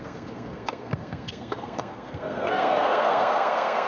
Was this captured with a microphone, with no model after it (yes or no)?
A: no